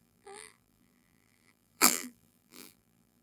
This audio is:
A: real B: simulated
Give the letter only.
B